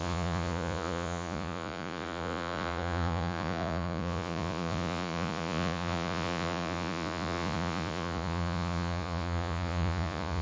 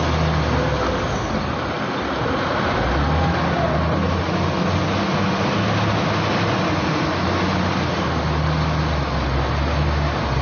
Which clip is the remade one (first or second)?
first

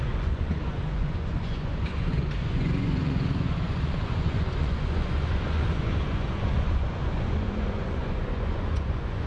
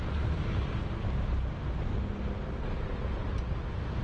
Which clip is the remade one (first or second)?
first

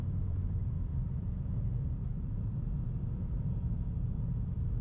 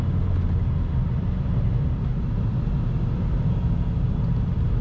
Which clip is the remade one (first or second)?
first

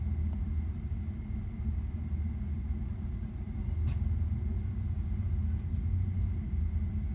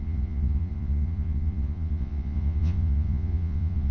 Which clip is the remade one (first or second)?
second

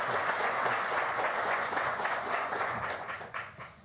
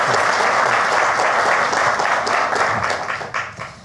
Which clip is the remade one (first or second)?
first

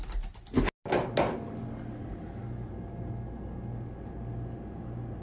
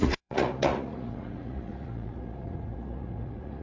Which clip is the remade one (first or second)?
second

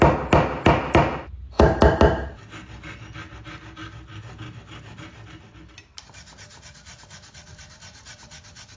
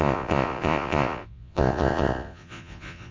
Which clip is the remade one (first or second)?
second